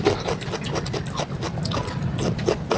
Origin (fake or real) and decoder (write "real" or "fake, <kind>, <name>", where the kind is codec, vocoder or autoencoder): real